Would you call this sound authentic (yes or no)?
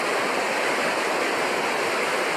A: yes